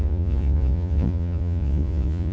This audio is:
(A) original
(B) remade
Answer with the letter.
B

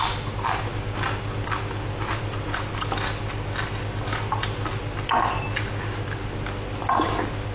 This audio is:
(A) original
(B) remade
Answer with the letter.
A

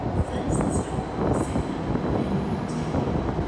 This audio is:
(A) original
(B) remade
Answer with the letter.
A